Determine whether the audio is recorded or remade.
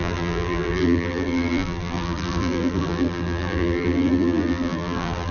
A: remade